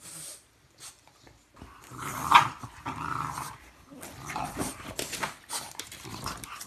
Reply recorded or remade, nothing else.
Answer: recorded